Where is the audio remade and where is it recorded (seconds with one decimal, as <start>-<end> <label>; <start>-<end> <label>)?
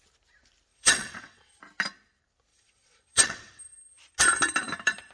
0.0-0.7 recorded; 0.7-1.5 remade; 1.5-2.5 recorded; 2.5-3.6 remade; 3.6-5.1 recorded